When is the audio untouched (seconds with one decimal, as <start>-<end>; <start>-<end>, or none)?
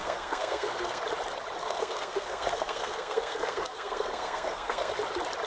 1.0-1.6; 4.9-5.5